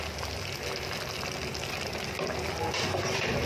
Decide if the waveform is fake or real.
real